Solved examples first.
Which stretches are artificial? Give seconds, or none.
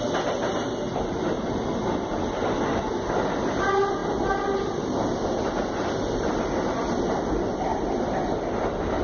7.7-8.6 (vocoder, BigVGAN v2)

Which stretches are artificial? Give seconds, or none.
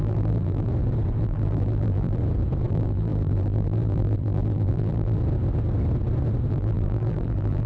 0.0-0.7 (vocoder, BigVGAN v2); 1.2-2.2; 2.7-5.2; 6.5-7.7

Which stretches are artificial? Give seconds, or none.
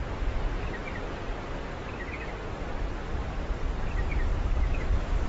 4.3-4.8 (vocoder, BigVGAN v2)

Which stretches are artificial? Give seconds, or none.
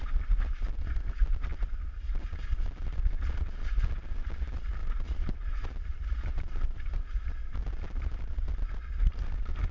4.8-7.6 (vocoder, BigVGAN v2)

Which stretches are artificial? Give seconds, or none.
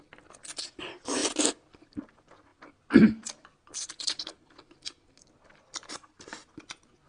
none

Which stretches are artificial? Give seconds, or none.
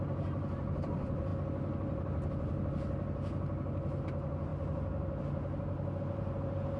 0.0-1.3 (vocoder, BigVGAN v2); 4.0-4.5; 6.0-6.8